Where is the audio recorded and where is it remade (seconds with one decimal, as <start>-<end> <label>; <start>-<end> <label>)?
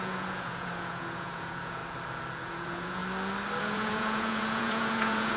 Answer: 0.0-1.8 remade; 1.8-2.4 recorded; 2.4-3.0 remade; 3.0-3.6 recorded; 3.6-5.4 remade